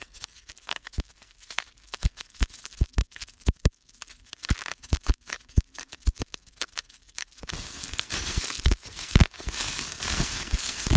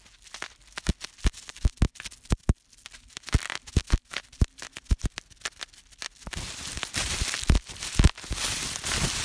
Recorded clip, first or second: second